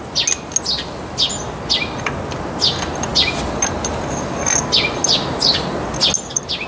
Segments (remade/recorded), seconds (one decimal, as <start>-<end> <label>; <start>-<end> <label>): 0.0-6.7 recorded